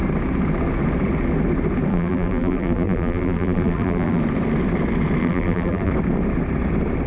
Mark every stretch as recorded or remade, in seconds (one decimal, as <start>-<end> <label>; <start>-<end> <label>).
0.0-1.9 recorded; 1.9-4.2 remade; 4.2-5.2 recorded; 5.2-5.9 remade; 5.9-7.1 recorded

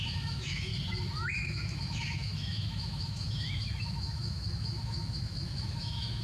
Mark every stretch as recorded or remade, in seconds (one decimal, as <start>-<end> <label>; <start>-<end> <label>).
0.0-0.7 remade; 0.7-1.3 recorded; 1.3-6.2 remade

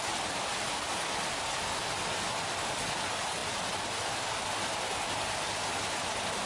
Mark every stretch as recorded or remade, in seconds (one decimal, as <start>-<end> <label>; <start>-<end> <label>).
0.0-6.5 recorded

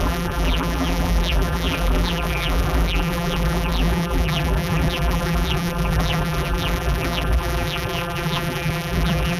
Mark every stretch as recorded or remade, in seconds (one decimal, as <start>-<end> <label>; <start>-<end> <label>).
0.0-9.4 remade

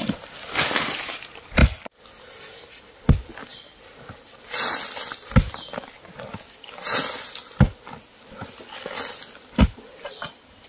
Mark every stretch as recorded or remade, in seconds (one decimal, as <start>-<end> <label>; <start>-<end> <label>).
0.0-10.7 recorded

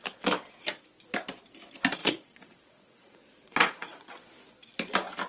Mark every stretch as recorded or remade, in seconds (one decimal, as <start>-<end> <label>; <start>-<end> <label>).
0.0-2.0 recorded; 2.0-4.1 remade; 4.1-5.3 recorded

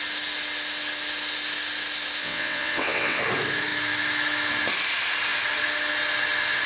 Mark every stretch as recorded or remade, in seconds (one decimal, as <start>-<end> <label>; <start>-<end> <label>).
0.0-2.2 recorded; 2.2-3.2 remade; 3.2-6.7 recorded

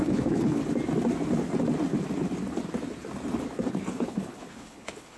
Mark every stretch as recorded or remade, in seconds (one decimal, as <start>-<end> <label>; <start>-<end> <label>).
0.0-0.6 remade; 0.6-3.7 recorded; 3.7-5.2 remade